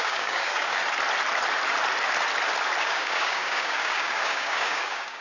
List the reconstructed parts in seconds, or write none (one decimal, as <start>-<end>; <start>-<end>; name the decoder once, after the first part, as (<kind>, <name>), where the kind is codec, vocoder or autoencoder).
0.0-0.8 (codec, DAC); 2.8-5.2